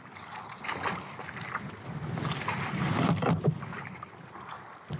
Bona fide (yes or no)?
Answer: yes